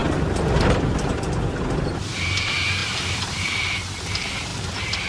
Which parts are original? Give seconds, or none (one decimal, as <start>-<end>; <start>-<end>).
0.0-2.0